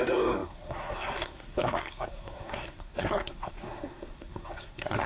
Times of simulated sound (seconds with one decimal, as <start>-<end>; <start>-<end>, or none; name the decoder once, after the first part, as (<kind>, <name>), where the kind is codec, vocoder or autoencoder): 0.0-5.1 (codec, SNAC)